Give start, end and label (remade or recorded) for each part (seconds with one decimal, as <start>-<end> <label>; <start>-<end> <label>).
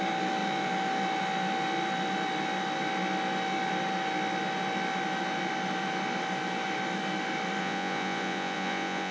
0.0-7.6 recorded; 7.6-9.1 remade